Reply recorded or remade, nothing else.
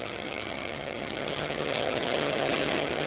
remade